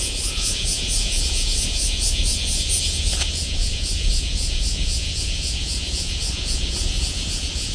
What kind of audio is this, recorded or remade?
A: remade